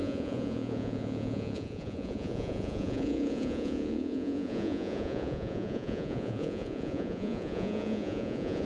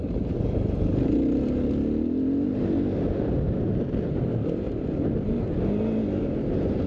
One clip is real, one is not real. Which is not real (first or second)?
first